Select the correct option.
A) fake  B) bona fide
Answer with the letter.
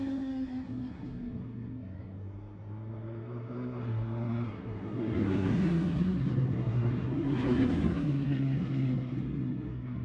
A